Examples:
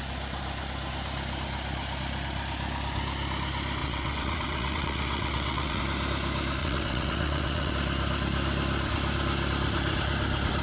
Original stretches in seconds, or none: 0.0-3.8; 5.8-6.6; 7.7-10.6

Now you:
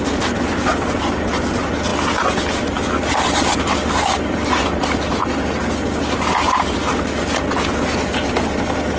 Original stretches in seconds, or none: 0.0-9.0

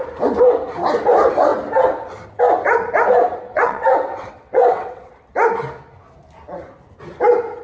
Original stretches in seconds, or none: 0.0-3.5; 5.1-7.6

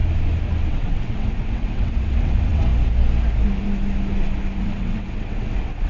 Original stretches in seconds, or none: 0.0-0.7; 2.7-4.6

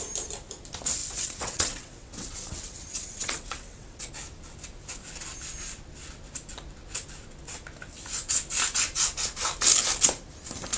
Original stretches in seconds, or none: 0.0-1.0; 4.1-10.8

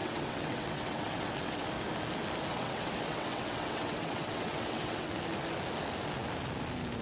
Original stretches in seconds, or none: 1.7-2.5; 5.2-7.0

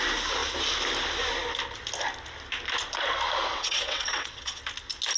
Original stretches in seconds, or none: 0.0-3.5; 4.6-5.2

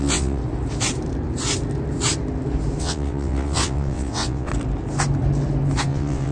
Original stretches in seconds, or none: 0.4-2.8; 4.5-5.8